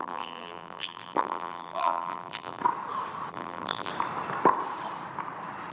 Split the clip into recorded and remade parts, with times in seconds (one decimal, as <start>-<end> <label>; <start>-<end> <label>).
0.0-2.6 remade; 2.6-3.3 recorded; 3.3-3.9 remade; 3.9-5.7 recorded